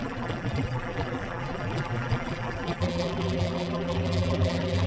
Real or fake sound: fake